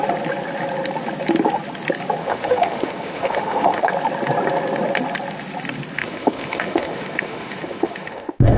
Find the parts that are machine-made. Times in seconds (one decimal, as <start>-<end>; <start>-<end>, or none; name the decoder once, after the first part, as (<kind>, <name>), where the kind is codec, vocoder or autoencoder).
2.2-3.9 (autoencoder, DAC-VAE); 6.0-8.6